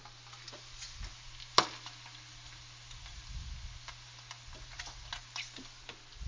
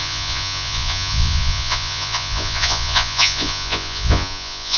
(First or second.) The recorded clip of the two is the first